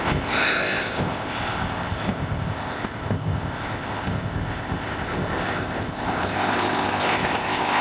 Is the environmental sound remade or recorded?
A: remade